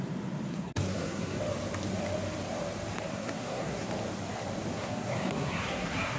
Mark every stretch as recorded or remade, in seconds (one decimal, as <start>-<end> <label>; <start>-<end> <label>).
0.0-0.5 recorded; 0.5-1.4 remade; 1.4-3.1 recorded; 3.1-3.9 remade; 3.9-4.7 recorded; 4.7-6.2 remade